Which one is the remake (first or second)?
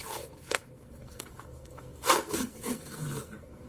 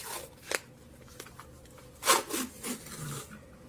first